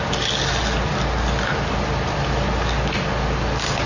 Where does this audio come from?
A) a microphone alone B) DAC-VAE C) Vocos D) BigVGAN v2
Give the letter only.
A